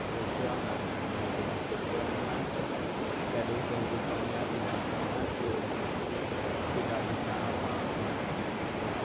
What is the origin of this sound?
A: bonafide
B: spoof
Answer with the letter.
A